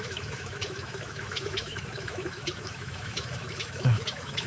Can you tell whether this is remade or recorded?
remade